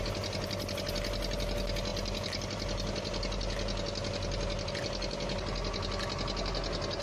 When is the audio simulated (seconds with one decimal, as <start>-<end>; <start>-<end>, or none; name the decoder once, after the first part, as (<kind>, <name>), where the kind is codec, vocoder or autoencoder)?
none